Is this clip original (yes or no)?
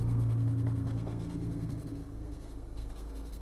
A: no